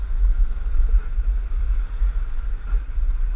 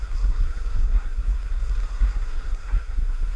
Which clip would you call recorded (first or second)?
first